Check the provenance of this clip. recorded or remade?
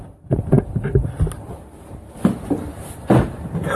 recorded